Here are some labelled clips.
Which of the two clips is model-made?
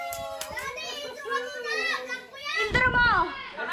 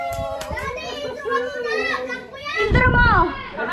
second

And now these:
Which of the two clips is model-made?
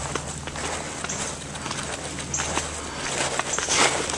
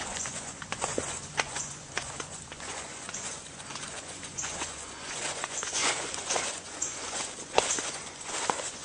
second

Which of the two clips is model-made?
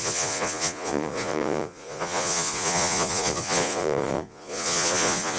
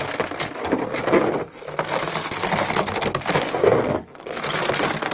first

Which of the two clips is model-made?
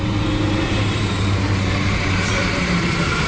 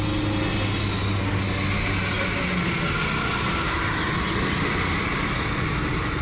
first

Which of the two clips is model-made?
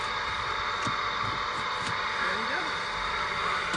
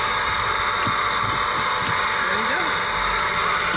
first